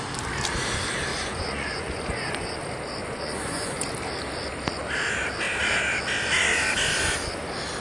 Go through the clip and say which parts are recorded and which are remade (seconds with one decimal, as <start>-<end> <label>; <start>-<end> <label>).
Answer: 0.0-1.1 recorded; 1.1-2.6 remade; 2.6-3.0 recorded; 3.0-3.8 remade; 3.8-7.8 recorded